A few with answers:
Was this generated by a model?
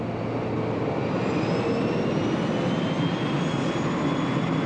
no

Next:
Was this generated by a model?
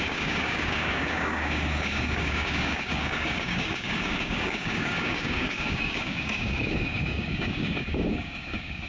yes